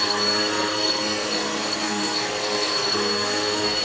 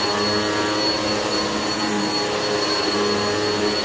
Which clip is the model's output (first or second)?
first